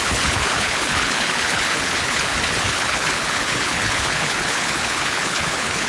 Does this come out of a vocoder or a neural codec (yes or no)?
yes